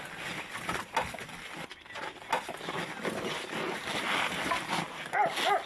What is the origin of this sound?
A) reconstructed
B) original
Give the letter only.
B